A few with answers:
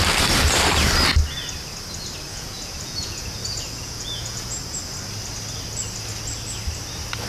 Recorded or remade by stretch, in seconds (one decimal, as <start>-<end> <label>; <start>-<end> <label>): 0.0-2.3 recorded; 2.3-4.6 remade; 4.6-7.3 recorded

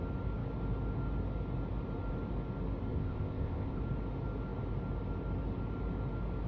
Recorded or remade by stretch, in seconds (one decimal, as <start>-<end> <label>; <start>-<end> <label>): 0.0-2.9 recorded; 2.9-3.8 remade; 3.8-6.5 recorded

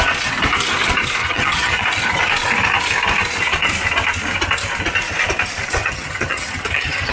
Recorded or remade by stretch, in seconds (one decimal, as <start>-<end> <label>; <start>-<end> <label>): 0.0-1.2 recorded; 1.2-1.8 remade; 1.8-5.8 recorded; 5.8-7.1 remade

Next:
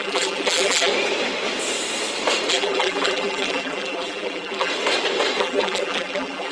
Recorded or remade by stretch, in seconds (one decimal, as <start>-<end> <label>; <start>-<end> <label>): 0.0-0.9 remade; 0.9-2.5 recorded; 2.5-4.7 remade; 4.7-5.4 recorded; 5.4-6.5 remade

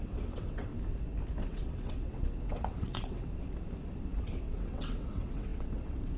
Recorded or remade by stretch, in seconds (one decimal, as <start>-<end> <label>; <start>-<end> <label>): 0.0-0.7 remade; 0.7-1.4 recorded; 1.4-3.3 remade; 3.3-4.2 recorded; 4.2-6.2 remade

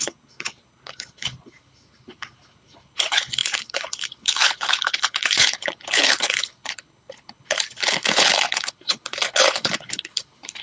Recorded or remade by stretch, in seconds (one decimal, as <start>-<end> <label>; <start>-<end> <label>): 0.0-10.6 remade

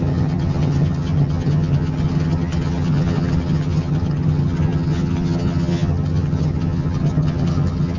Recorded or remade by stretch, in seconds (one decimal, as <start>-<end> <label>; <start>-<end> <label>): 0.0-8.0 remade

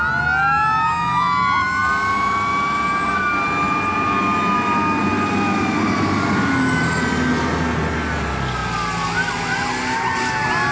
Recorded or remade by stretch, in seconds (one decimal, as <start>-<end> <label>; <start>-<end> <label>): 0.0-10.7 recorded